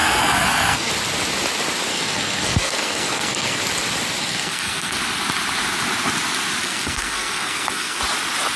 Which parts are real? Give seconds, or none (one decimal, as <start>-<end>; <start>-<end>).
0.9-1.9; 3.6-4.2; 5.0-6.6; 8.0-8.6